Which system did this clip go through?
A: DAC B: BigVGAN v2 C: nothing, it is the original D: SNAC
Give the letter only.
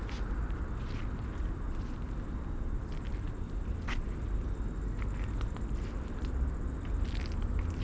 C